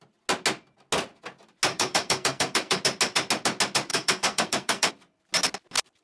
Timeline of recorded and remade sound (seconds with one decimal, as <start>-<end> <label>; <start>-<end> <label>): 0.0-1.7 recorded; 1.7-2.8 remade; 2.8-3.9 recorded; 3.9-4.9 remade; 4.9-6.0 recorded